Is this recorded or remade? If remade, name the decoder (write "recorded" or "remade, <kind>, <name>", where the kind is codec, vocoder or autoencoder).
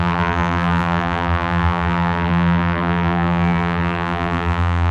remade, vocoder, BigVGAN v2